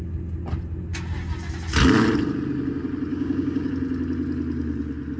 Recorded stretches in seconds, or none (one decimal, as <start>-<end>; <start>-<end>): 0.0-3.1; 3.7-5.2